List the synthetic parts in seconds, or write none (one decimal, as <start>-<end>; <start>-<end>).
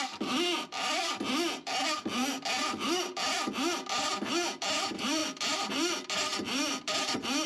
5.2-5.7